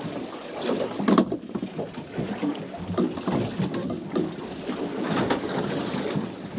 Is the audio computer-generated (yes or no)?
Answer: no